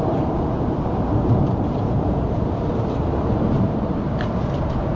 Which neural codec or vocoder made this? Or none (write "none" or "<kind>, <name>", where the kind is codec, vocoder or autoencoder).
vocoder, BigVGAN v2